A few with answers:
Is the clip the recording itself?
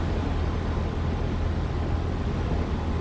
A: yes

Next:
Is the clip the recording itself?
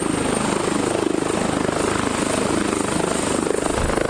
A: yes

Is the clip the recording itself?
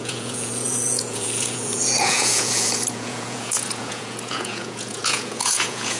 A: no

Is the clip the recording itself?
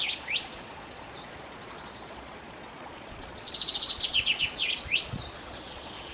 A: no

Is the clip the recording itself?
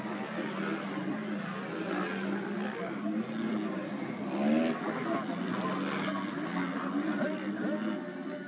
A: yes